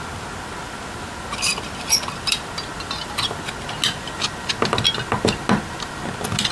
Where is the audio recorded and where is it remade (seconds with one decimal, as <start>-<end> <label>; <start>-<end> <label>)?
0.0-6.5 recorded